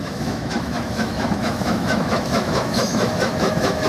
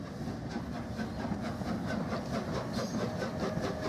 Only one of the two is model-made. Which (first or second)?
first